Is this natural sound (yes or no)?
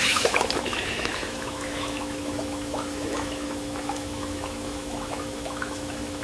no